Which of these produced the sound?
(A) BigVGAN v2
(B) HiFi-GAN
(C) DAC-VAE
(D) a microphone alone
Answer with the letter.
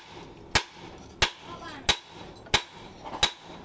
D